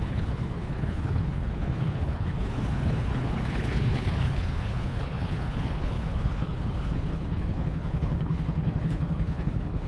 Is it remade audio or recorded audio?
remade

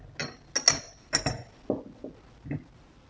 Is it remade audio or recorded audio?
recorded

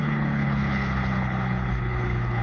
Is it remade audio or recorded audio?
remade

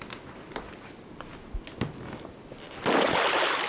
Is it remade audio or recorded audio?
recorded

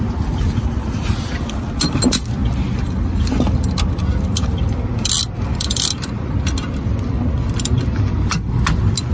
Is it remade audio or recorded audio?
recorded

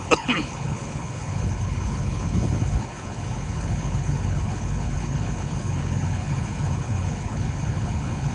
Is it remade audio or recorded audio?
remade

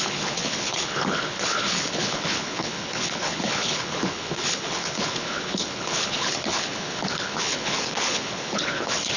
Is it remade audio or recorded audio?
remade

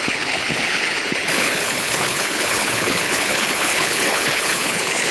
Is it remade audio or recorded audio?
remade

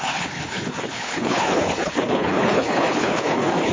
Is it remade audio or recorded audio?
remade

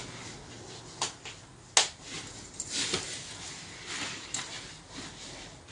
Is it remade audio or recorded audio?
recorded